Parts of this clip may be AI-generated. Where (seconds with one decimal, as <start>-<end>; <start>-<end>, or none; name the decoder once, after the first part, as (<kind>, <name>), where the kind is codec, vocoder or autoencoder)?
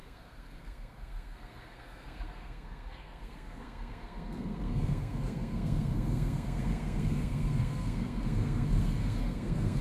0.0-9.8 (codec, SNAC)